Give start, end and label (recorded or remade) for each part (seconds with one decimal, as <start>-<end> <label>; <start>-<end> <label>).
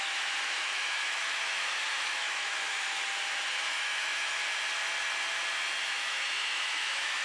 0.0-3.0 remade; 3.0-3.6 recorded; 3.6-4.4 remade; 4.4-5.8 recorded; 5.8-7.2 remade